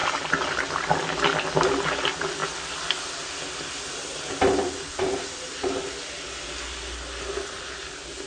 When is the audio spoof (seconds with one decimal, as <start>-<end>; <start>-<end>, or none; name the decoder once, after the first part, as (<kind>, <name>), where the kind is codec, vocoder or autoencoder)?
none